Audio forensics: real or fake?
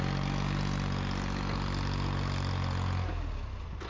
real